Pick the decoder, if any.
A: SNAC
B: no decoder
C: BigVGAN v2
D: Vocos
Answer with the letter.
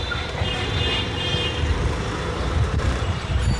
C